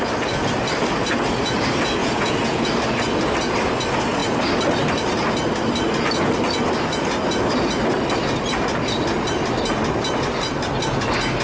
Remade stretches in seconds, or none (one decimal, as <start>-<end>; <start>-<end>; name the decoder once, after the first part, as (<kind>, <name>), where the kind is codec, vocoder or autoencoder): 2.0-2.7 (vocoder, Vocos)